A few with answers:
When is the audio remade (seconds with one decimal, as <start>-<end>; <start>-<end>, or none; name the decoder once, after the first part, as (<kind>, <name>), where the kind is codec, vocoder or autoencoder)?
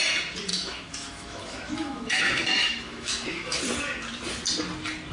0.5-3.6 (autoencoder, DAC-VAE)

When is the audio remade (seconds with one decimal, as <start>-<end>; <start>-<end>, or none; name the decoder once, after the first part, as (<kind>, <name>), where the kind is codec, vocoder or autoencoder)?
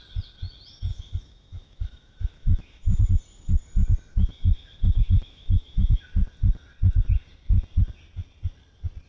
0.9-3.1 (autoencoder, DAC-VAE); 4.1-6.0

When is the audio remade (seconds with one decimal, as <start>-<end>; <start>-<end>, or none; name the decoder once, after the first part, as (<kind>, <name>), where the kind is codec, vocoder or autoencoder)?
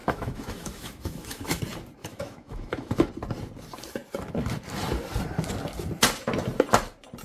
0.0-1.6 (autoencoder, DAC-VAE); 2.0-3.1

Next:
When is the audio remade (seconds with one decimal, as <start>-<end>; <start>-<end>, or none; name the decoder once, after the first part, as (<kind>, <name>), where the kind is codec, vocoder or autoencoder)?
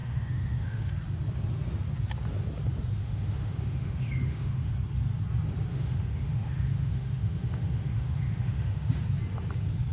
0.0-0.9 (autoencoder, DAC-VAE); 3.0-4.7; 5.7-8.9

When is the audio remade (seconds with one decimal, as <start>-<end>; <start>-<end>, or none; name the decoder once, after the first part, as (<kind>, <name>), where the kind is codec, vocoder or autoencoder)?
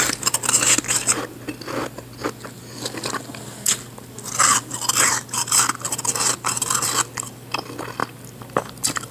none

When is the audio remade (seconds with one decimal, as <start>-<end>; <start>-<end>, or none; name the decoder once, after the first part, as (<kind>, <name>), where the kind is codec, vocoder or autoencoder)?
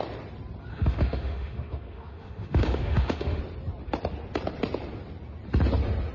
0.7-3.4 (autoencoder, DAC-VAE)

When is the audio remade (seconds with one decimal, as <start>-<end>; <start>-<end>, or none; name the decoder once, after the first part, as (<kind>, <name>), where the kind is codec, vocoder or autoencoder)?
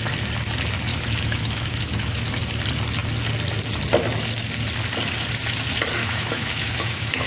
0.9-2.3 (autoencoder, DAC-VAE); 6.0-7.3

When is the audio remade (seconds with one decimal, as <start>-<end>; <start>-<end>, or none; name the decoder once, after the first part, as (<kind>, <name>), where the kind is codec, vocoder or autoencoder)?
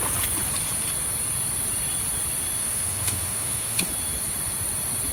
2.6-3.9 (autoencoder, DAC-VAE)